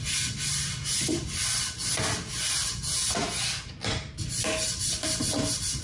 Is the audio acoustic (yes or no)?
yes